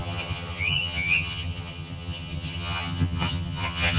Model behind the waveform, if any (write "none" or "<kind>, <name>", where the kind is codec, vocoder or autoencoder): vocoder, HiFi-GAN